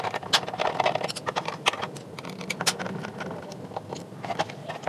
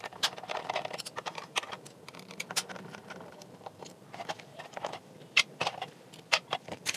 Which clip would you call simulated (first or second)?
second